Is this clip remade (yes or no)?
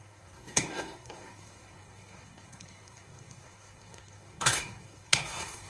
yes